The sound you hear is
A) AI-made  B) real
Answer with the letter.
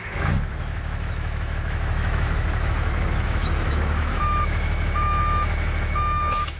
A